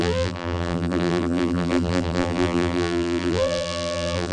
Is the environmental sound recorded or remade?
remade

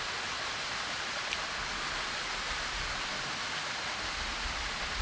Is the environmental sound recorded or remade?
recorded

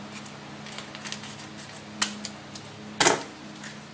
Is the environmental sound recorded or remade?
recorded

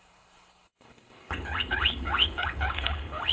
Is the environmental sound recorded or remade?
remade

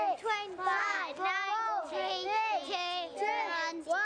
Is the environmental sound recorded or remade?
recorded